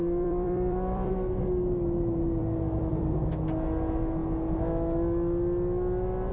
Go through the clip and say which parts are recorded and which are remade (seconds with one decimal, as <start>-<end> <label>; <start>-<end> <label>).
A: 0.0-1.1 remade; 1.1-2.4 recorded; 2.4-3.3 remade; 3.3-6.3 recorded